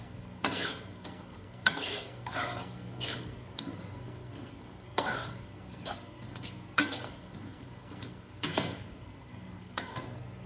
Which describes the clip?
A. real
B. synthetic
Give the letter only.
B